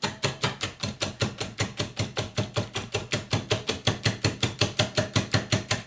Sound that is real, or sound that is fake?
fake